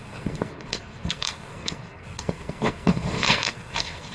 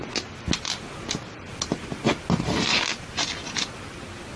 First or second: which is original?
second